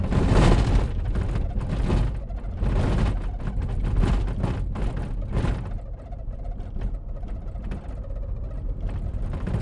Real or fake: real